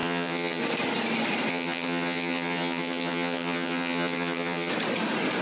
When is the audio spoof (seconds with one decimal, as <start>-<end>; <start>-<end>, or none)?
0.0-0.6; 1.5-4.7